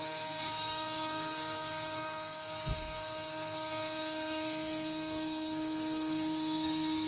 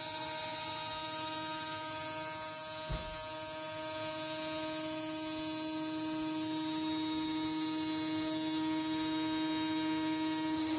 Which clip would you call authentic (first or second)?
second